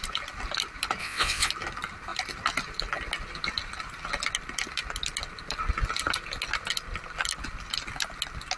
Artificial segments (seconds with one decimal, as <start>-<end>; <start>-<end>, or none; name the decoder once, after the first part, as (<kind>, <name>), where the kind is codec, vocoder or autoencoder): 1.0-1.5 (vocoder, WaveNeXt)

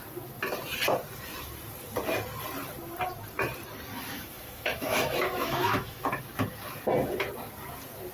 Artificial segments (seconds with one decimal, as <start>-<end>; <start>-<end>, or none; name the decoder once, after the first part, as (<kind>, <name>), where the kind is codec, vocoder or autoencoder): 3.9-6.1 (autoencoder, DAC-VAE)

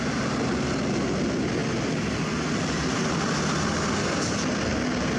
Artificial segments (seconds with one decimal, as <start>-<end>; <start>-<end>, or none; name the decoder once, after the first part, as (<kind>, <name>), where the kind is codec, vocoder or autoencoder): none

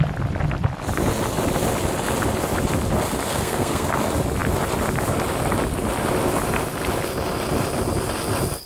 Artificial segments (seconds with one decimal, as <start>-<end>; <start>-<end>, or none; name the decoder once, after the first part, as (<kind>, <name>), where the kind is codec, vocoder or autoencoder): 3.3-3.9 (codec, SNAC)

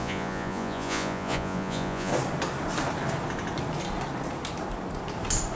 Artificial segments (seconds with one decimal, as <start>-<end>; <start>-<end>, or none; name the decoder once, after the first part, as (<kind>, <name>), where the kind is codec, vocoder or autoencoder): 0.0-2.1 (vocoder, Vocos)

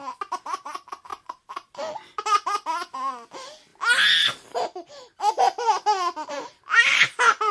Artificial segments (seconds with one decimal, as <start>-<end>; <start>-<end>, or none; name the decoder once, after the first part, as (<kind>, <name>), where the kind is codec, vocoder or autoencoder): 1.1-1.8 (vocoder, BigVGAN v2)

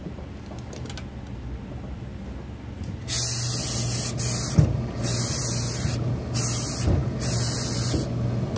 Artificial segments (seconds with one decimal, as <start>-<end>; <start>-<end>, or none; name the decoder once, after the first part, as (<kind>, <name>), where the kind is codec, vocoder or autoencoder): none